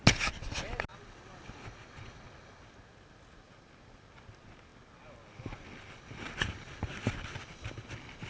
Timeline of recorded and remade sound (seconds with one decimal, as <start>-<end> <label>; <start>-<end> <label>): 0.0-8.3 recorded